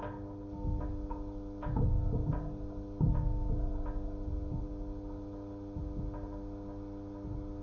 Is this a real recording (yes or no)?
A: yes